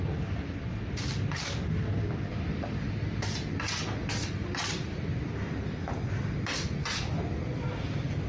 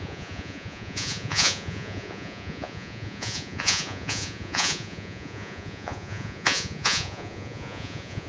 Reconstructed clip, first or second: second